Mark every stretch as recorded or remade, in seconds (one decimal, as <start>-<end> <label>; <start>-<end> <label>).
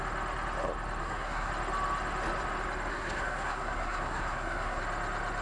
0.0-1.0 recorded; 1.0-1.5 remade; 1.5-2.9 recorded; 2.9-4.8 remade; 4.8-5.4 recorded